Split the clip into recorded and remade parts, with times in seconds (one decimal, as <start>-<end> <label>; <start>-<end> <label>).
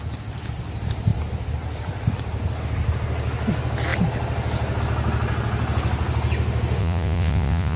0.0-6.8 recorded; 6.8-7.8 remade